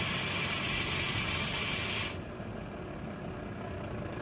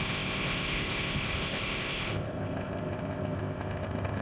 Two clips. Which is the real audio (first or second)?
first